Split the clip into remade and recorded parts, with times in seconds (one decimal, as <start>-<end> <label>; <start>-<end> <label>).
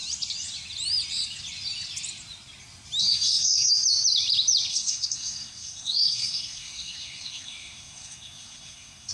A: 0.0-3.0 recorded; 3.0-3.7 remade; 3.7-4.7 recorded; 4.7-9.1 remade